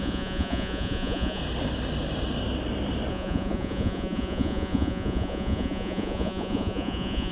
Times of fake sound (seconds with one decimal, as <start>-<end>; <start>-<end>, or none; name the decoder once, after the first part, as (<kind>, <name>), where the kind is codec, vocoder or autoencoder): 0.0-1.4 (vocoder, Vocos); 3.1-7.3

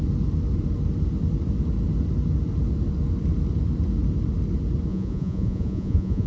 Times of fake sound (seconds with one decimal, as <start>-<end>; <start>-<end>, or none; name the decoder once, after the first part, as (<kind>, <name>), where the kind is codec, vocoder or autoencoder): 4.9-6.3 (vocoder, Vocos)